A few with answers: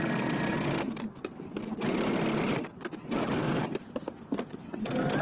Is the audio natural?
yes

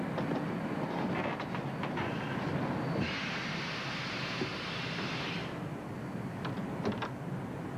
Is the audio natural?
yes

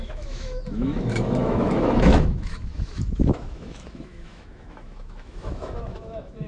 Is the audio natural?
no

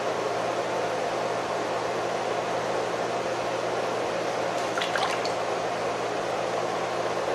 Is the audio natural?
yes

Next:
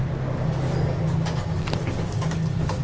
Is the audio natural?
yes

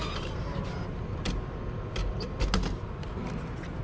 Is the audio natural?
yes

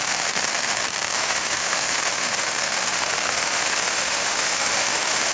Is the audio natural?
no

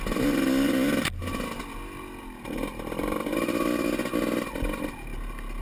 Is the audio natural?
yes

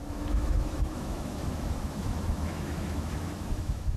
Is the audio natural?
no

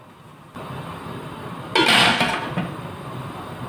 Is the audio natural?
yes